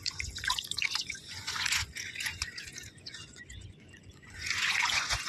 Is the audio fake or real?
fake